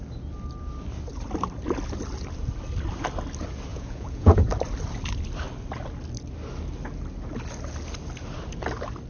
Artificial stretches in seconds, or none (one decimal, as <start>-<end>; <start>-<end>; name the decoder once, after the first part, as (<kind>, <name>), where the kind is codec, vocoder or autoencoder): 3.7-4.5 (vocoder, Vocos)